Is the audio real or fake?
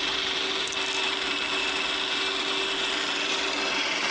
real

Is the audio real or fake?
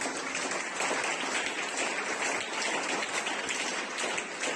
real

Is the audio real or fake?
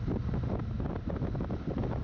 real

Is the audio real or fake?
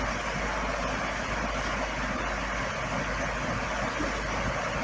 real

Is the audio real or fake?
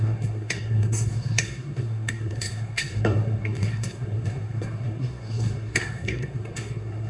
fake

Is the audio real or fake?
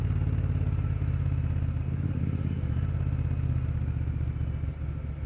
real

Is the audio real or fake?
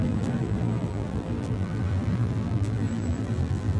fake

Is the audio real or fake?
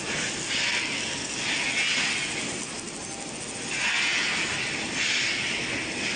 real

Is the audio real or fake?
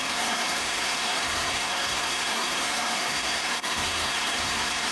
fake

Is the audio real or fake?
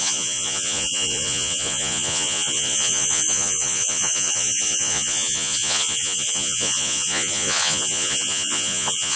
fake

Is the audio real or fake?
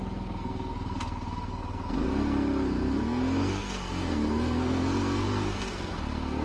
fake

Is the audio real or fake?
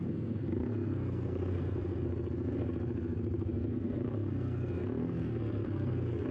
fake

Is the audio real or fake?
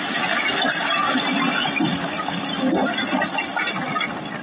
real